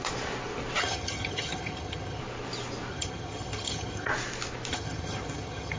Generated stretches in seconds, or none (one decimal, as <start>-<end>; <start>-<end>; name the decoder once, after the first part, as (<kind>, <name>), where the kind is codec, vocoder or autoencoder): 0.8-2.2 (vocoder, HiFi-GAN); 2.9-4.1; 4.7-5.8